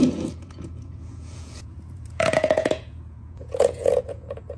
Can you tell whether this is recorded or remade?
remade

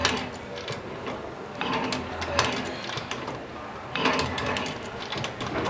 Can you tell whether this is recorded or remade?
recorded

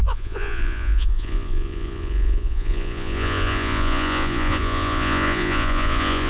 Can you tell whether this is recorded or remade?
remade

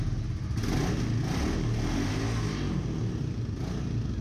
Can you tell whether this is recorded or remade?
recorded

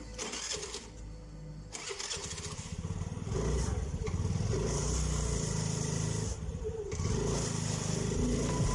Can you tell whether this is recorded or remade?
recorded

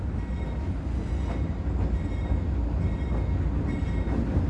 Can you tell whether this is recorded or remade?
recorded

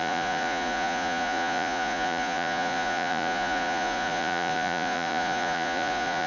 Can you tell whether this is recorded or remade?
remade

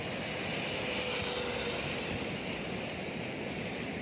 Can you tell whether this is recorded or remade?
recorded